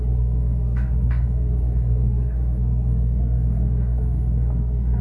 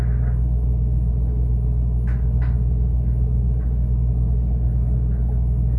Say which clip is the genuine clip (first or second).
second